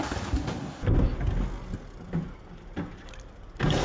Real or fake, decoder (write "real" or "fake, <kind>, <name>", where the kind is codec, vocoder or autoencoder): real